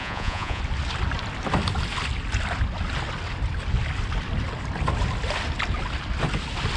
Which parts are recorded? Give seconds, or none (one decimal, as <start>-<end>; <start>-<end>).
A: 0.6-6.8

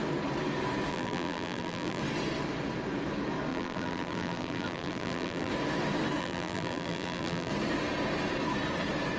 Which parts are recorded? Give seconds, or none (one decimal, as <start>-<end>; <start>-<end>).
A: 0.0-0.9; 2.0-3.5; 5.5-6.2; 7.5-9.2

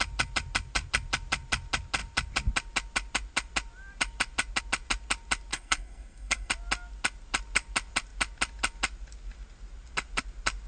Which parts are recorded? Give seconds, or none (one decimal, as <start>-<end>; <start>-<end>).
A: 0.0-5.5; 6.5-10.7

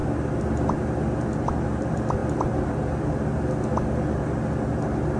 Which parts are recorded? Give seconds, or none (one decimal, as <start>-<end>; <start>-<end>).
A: 0.0-5.2

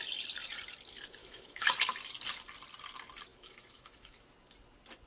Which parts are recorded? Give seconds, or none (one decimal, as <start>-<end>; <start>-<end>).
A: 0.0-1.2; 1.7-3.3; 4.2-5.1

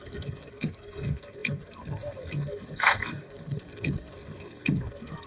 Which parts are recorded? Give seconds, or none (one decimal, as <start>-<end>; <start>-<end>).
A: none